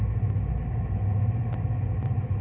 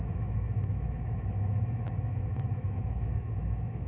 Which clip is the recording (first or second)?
first